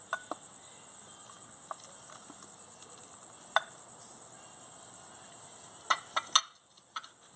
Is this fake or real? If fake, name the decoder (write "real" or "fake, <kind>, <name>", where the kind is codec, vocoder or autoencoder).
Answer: real